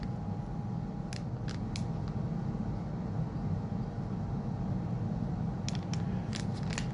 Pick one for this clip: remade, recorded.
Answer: recorded